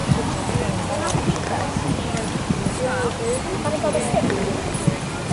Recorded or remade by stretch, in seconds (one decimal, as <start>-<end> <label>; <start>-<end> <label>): 0.0-2.8 remade; 2.8-5.3 recorded